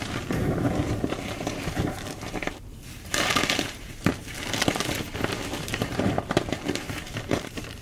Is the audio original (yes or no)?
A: no